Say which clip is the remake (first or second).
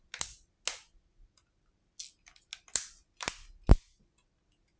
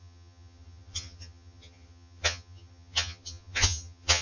second